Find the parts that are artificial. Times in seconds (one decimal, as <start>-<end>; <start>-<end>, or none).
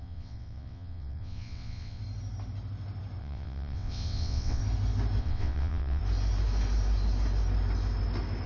0.0-2.0; 3.2-4.6; 5.2-6.0